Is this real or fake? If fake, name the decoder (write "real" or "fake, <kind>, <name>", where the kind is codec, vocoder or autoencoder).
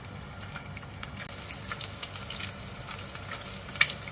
real